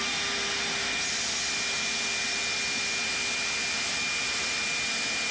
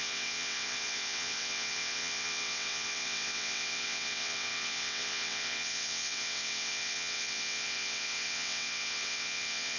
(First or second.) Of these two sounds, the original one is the first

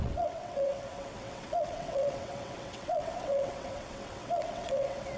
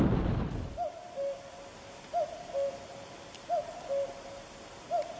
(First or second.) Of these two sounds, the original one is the second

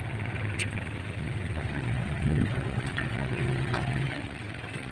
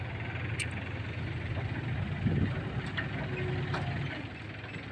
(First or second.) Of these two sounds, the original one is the second